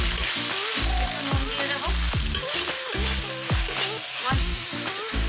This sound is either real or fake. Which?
real